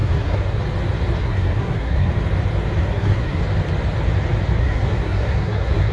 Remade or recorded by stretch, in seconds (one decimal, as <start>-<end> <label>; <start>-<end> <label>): 0.0-0.6 remade; 0.6-1.2 recorded; 1.2-2.1 remade; 2.1-2.8 recorded; 2.8-3.4 remade; 3.4-4.6 recorded; 4.6-5.9 remade